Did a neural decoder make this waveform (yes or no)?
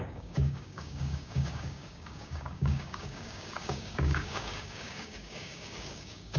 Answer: yes